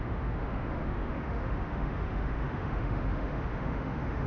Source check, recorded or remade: remade